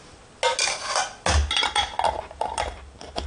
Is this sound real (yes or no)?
yes